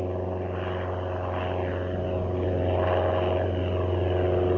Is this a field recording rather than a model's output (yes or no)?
yes